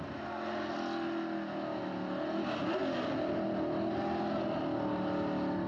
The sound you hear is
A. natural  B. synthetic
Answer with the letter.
A